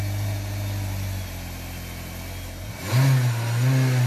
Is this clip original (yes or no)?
yes